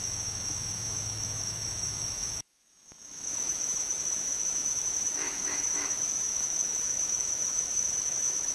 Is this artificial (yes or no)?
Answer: yes